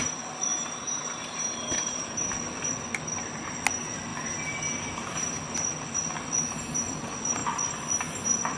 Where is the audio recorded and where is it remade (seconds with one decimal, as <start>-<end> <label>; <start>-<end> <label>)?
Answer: 0.0-0.5 recorded; 0.5-2.3 remade; 2.3-4.1 recorded; 4.1-5.2 remade; 5.2-8.6 recorded